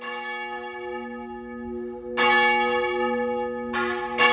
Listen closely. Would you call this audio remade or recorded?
recorded